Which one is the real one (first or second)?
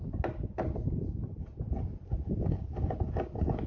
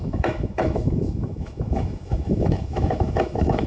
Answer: first